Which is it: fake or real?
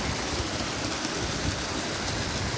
real